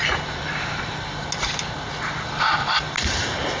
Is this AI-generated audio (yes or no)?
no